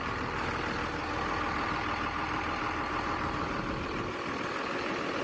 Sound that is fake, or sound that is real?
real